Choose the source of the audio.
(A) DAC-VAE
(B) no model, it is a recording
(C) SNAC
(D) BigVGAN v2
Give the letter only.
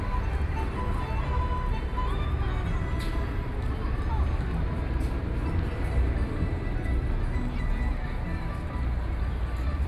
B